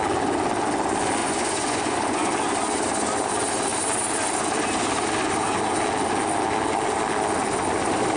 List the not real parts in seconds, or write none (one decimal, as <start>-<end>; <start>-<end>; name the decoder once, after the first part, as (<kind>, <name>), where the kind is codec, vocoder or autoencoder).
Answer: 1.2-2.3 (vocoder, Vocos)